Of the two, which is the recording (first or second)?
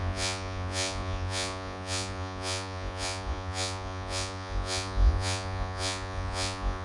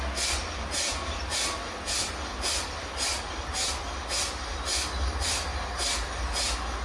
second